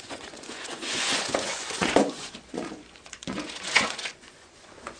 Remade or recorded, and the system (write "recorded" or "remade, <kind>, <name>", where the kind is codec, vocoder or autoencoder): remade, vocoder, Vocos